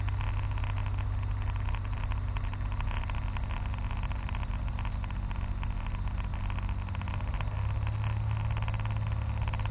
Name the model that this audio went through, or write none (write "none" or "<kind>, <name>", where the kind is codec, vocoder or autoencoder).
none